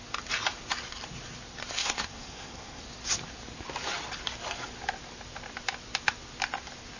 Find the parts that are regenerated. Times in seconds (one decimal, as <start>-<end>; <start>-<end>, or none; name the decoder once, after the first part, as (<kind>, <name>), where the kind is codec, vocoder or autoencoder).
1.8-2.8 (codec, SNAC)

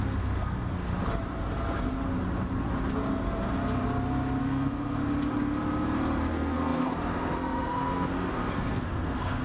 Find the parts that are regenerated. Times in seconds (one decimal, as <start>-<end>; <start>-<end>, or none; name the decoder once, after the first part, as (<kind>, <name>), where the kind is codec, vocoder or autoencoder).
0.0-0.9 (codec, SNAC); 4.4-5.0; 6.3-9.4

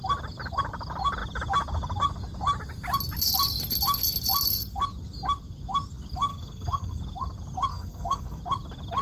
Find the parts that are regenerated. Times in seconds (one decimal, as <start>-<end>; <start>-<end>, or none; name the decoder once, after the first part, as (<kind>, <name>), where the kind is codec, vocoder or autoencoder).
6.3-7.0 (codec, SNAC); 7.7-8.4

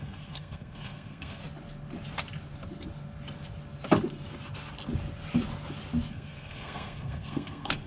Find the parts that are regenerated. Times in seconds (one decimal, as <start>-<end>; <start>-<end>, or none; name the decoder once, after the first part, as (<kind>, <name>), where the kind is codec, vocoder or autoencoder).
0.0-1.4 (codec, SNAC); 6.1-7.9

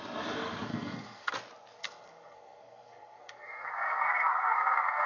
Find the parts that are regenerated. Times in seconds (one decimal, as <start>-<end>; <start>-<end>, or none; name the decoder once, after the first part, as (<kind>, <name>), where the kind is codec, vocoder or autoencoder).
0.7-1.3 (codec, SNAC); 1.8-5.1